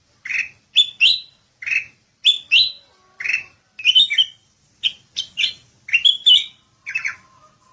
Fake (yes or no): no